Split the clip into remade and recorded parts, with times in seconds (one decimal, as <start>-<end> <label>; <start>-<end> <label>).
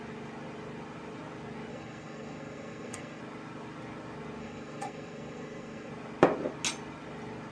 0.0-1.7 recorded; 1.7-3.2 remade; 3.2-4.4 recorded; 4.4-5.9 remade; 5.9-7.5 recorded